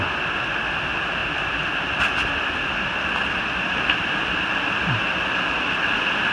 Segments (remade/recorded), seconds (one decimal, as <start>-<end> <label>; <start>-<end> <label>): 0.0-1.2 recorded; 1.2-5.0 remade; 5.0-6.3 recorded